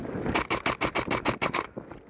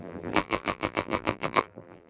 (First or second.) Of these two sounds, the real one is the first